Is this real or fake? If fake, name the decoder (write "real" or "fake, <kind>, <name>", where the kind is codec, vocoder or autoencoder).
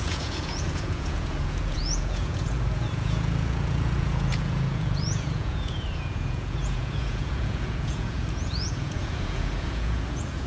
fake, vocoder, Vocos